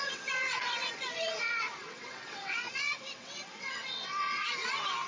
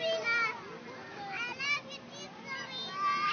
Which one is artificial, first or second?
first